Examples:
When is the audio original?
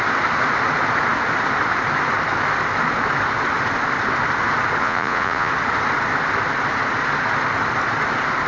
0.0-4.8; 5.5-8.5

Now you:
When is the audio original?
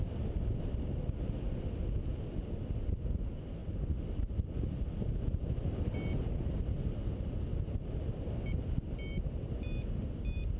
0.0-10.6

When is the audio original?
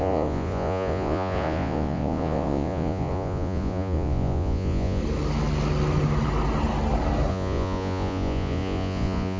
5.0-7.3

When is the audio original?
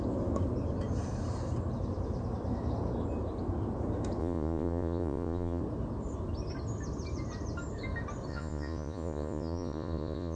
0.0-4.2; 5.6-8.3